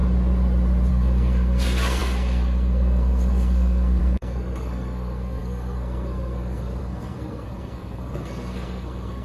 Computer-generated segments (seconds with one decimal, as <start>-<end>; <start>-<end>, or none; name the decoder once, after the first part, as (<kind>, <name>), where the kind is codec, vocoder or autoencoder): 0.9-9.2 (codec, SNAC)